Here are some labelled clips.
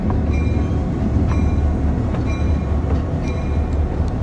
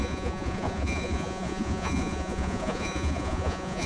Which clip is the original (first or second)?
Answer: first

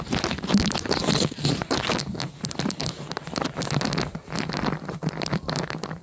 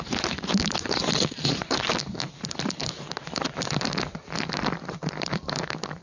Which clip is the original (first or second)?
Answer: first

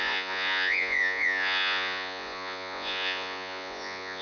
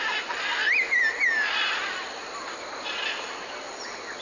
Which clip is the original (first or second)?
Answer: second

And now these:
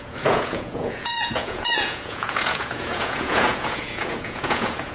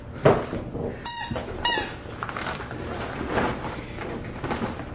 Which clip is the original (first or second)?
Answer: second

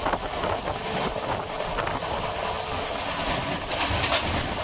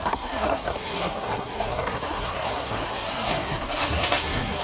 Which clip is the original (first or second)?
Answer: first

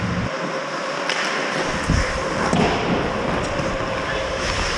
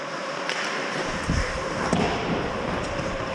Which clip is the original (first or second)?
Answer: first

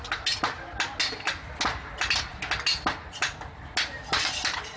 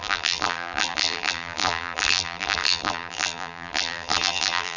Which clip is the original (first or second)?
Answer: first